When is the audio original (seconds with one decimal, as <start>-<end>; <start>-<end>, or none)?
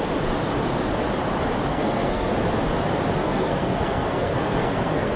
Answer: 0.0-1.7; 2.3-3.2